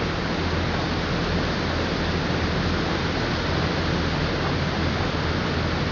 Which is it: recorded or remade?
recorded